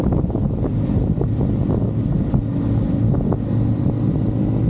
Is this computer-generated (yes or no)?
no